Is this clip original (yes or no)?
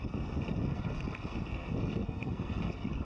no